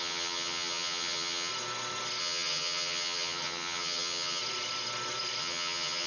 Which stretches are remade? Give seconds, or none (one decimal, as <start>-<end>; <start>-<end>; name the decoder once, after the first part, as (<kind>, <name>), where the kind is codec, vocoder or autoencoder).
0.0-1.5 (vocoder, HiFi-GAN); 2.2-4.4; 5.4-6.1